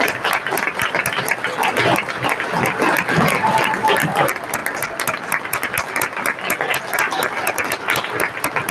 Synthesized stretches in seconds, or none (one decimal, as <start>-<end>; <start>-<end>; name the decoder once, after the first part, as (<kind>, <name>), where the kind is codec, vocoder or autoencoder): none